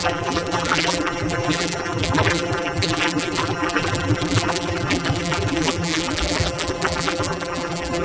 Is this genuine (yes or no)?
no